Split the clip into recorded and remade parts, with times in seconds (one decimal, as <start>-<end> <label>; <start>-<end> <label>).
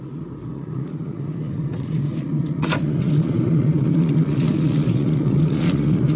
0.0-6.2 remade